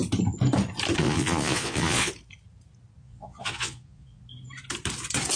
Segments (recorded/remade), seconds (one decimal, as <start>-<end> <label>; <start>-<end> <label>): 0.0-1.0 recorded; 1.0-2.1 remade; 2.1-3.0 recorded; 3.0-4.2 remade; 4.2-5.4 recorded